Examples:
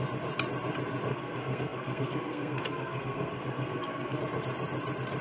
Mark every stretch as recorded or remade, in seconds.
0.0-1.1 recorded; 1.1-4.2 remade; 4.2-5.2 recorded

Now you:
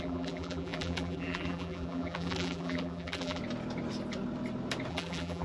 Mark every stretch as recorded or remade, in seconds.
0.0-3.4 remade; 3.4-4.9 recorded; 4.9-5.4 remade

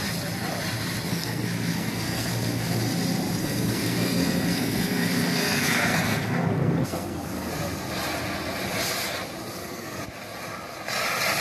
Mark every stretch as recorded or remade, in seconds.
0.0-1.1 recorded; 1.1-2.8 remade; 2.8-3.4 recorded; 3.4-7.5 remade; 7.5-9.5 recorded; 9.5-10.0 remade; 10.0-11.4 recorded

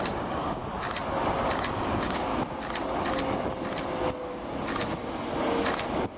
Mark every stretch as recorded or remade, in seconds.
0.0-0.6 remade; 0.6-1.9 recorded; 1.9-2.3 remade; 2.3-6.2 recorded

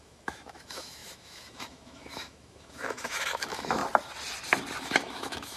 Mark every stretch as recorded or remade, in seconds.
0.0-3.8 remade; 3.8-4.8 recorded; 4.8-5.6 remade

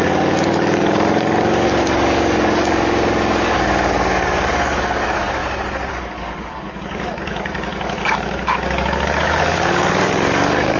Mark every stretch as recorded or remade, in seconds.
0.0-5.4 remade; 5.4-5.9 recorded; 5.9-10.8 remade